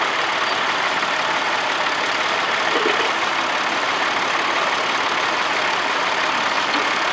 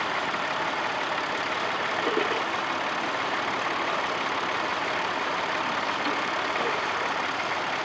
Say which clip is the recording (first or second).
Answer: first